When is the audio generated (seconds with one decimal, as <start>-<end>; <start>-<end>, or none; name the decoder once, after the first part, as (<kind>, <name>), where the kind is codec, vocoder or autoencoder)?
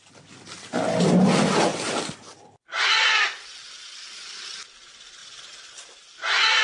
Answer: none